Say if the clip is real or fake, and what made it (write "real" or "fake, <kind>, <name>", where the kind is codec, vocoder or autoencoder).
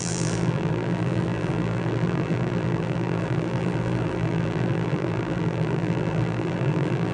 fake, vocoder, BigVGAN v2